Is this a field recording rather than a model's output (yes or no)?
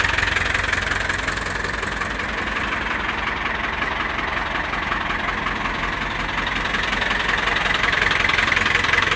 yes